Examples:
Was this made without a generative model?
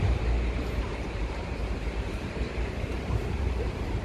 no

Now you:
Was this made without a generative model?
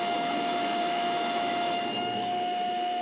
no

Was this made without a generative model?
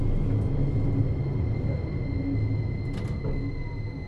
yes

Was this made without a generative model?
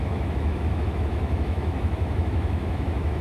no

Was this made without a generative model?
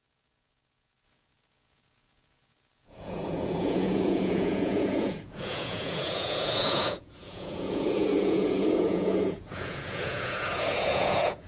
no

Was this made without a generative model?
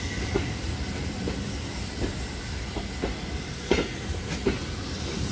yes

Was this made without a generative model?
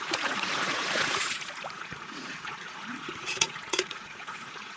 no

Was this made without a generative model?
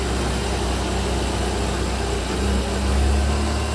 yes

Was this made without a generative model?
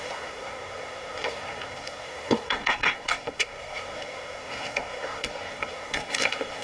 no